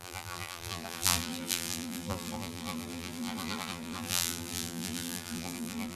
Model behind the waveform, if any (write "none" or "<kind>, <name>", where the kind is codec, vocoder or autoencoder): vocoder, BigVGAN v2